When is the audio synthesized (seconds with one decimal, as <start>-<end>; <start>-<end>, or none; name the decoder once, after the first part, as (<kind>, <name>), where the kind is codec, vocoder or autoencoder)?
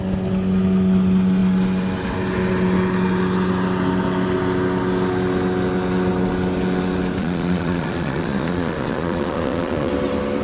7.2-9.9 (vocoder, Vocos)